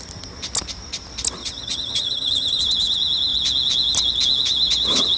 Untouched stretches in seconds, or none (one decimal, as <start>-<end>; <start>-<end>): 0.0-1.4; 2.6-5.2